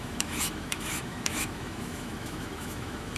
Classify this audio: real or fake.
fake